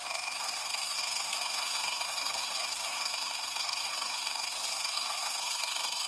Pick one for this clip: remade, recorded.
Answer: remade